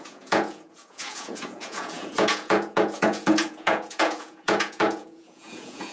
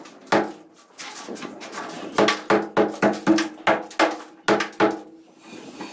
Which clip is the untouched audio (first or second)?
second